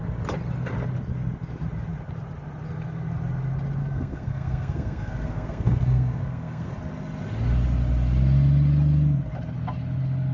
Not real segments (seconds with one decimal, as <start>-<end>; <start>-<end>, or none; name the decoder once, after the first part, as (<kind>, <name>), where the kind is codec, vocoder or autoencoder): 3.8-6.7 (codec, SNAC)